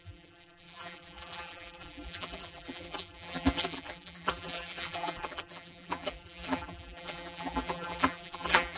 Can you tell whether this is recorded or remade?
remade